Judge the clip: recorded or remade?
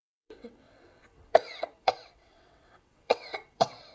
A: remade